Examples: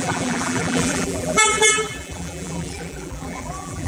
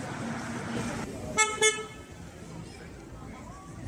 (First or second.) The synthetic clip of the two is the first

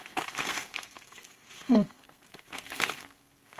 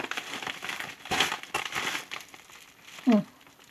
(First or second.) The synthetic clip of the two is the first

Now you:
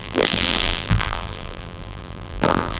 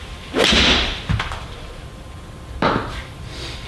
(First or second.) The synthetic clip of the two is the first